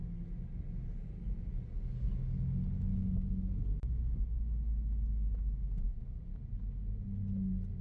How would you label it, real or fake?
real